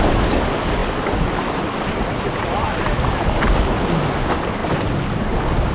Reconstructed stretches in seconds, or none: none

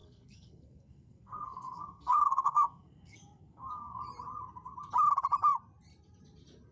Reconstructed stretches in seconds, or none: 0.0-4.0 (codec, SNAC)